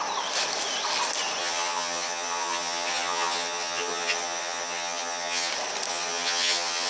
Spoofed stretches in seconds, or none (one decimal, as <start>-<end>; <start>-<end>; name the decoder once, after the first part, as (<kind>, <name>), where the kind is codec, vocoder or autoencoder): 1.4-5.5 (vocoder, HiFi-GAN); 5.9-6.9

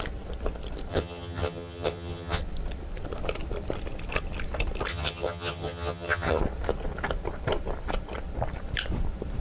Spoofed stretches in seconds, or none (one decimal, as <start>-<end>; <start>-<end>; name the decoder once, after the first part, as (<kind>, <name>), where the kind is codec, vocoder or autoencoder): 0.9-2.4 (vocoder, HiFi-GAN); 4.9-6.4

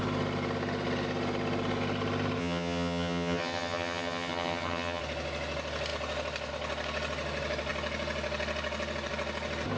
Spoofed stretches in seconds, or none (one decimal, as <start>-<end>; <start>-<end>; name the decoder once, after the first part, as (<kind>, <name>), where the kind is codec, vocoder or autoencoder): 2.4-5.0 (vocoder, HiFi-GAN)

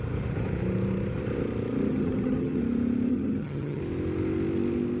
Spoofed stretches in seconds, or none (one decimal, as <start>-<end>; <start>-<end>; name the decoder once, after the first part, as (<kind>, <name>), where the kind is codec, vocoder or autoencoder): 1.9-2.6 (vocoder, HiFi-GAN); 3.1-3.8

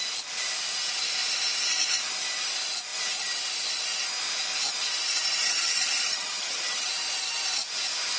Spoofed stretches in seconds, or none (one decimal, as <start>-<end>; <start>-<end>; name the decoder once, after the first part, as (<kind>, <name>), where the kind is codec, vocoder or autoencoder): 5.4-6.9 (vocoder, HiFi-GAN)

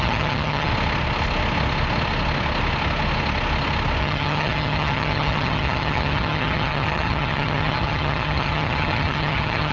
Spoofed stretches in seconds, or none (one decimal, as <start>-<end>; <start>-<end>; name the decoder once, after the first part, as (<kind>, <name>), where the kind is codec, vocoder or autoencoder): 0.0-0.7 (vocoder, HiFi-GAN); 4.0-9.7

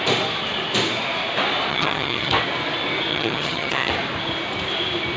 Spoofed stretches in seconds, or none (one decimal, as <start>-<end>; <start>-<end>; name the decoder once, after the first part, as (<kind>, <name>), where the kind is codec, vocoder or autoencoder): 1.7-2.3 (vocoder, HiFi-GAN); 3.1-3.9

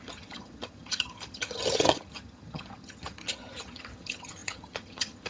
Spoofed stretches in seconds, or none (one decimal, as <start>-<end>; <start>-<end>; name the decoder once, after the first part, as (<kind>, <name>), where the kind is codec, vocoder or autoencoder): 0.0-5.3 (vocoder, HiFi-GAN)